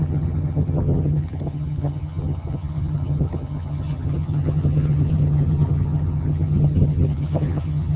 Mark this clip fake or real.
fake